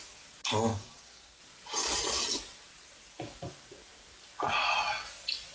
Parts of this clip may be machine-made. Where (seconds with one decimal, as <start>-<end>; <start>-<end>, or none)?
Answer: 0.7-1.4